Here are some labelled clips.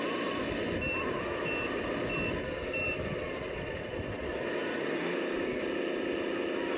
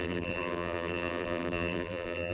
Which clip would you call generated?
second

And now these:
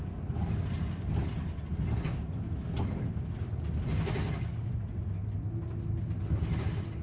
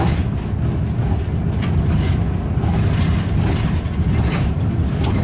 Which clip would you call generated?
second